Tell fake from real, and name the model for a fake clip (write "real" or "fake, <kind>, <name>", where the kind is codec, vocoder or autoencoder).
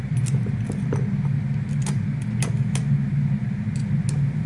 real